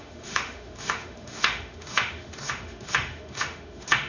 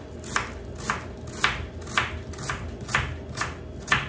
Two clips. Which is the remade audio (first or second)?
first